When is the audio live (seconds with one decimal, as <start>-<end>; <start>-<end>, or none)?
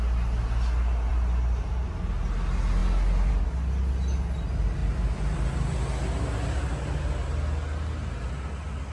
0.0-8.9